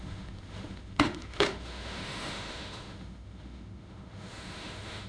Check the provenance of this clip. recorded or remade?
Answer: remade